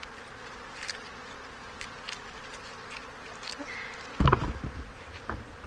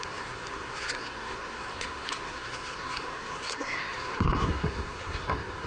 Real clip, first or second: first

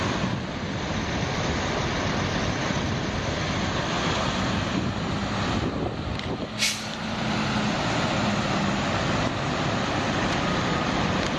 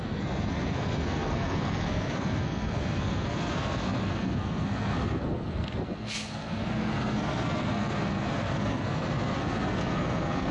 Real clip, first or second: first